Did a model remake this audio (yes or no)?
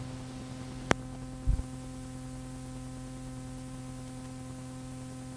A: no